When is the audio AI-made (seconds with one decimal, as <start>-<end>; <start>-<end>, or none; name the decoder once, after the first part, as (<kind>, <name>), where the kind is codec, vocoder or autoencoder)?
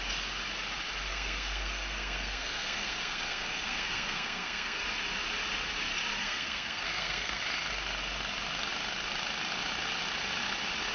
1.1-4.8 (codec, SNAC); 6.2-7.4